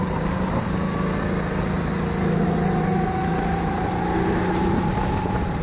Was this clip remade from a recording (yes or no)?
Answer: no